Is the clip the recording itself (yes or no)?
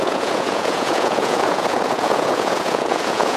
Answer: no